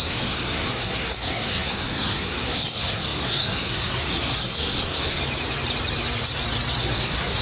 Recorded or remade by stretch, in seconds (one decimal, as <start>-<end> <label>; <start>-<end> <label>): 0.0-5.2 remade; 5.2-6.8 recorded; 6.8-7.4 remade